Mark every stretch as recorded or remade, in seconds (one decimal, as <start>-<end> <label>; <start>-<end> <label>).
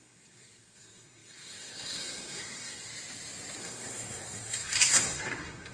0.0-2.9 remade; 2.9-3.6 recorded; 3.6-5.7 remade